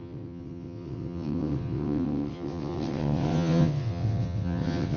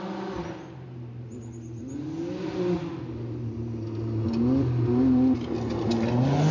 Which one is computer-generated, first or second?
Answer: first